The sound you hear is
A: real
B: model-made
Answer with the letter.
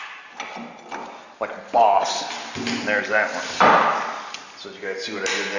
A